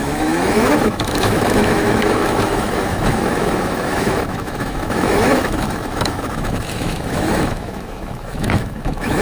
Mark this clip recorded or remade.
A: remade